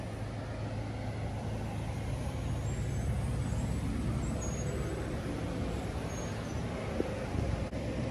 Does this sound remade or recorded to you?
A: recorded